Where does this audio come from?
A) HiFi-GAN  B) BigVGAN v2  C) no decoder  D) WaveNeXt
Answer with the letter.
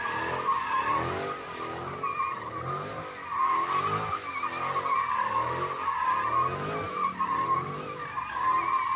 C